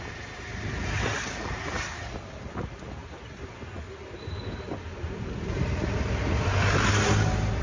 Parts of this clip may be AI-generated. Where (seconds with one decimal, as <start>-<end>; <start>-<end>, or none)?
none